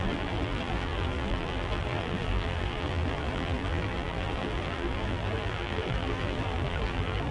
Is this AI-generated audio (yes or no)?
yes